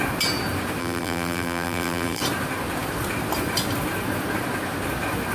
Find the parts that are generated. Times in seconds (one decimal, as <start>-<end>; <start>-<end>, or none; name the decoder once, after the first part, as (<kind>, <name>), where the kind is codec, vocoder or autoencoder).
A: 0.8-2.2 (vocoder, BigVGAN v2)